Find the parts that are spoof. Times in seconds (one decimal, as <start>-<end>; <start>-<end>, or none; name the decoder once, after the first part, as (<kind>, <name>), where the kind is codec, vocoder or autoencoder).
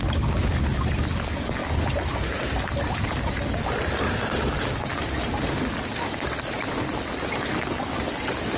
none